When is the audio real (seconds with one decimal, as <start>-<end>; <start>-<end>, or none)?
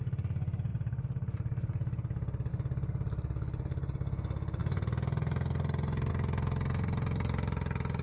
0.0-0.7; 2.5-8.0